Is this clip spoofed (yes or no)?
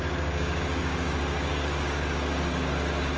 yes